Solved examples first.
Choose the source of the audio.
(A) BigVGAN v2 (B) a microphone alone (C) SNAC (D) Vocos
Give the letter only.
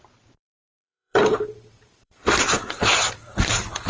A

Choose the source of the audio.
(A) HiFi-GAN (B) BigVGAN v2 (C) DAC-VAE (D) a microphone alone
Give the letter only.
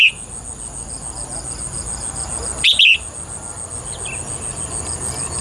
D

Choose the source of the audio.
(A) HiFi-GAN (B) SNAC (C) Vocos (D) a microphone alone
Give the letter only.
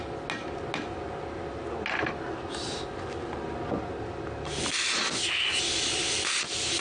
D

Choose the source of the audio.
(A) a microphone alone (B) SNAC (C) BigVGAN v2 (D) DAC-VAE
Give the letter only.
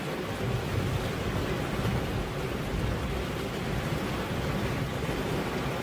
A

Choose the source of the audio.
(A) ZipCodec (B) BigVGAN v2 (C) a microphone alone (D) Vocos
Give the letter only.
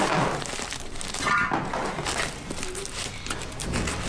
C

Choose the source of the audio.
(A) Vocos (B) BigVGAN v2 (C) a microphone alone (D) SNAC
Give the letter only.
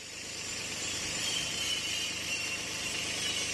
B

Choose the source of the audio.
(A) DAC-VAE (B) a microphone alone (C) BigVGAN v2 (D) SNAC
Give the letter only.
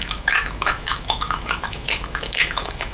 A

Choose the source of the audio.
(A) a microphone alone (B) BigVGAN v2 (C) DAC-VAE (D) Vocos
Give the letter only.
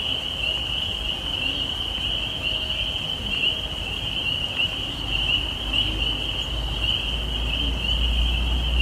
A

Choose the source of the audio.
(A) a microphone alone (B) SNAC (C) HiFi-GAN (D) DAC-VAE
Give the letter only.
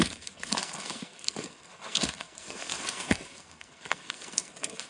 B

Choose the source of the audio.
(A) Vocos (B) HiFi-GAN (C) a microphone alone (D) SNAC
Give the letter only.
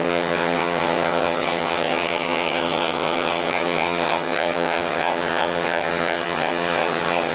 B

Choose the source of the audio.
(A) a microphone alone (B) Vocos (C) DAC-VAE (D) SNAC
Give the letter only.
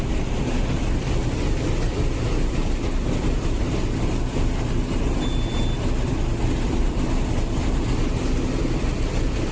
A